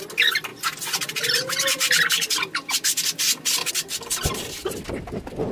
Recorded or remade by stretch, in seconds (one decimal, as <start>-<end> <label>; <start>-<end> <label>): 0.0-5.5 recorded